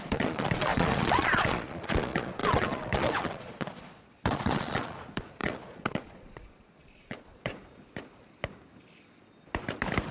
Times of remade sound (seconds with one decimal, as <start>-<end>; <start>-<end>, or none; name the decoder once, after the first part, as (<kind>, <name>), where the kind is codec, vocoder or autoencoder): 0.0-7.5 (vocoder, Vocos)